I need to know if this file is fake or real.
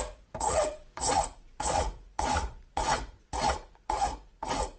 fake